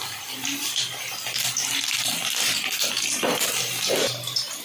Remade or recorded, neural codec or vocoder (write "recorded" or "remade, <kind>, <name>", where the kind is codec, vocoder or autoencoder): remade, vocoder, BigVGAN v2